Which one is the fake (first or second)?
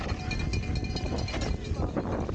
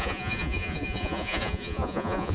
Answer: second